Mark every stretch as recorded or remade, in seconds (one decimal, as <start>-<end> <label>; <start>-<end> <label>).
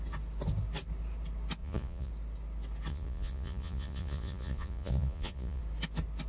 0.0-1.6 recorded; 1.6-2.1 remade; 2.1-2.9 recorded; 2.9-5.6 remade; 5.6-6.3 recorded